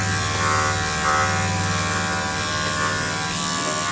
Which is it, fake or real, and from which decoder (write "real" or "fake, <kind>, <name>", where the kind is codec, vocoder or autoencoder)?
real